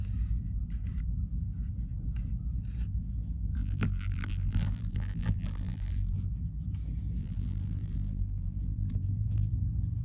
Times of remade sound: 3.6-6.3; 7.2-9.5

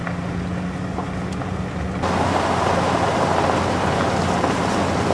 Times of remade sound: none

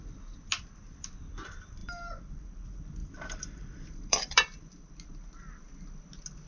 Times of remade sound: 1.8-2.4; 3.0-4.9

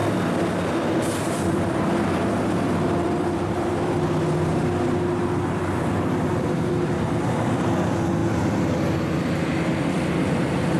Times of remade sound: 0.0-4.5; 5.8-8.2; 9.8-10.8

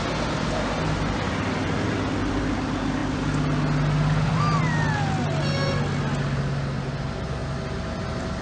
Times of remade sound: none